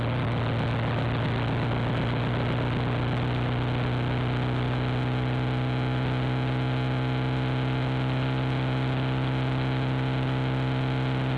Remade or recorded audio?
recorded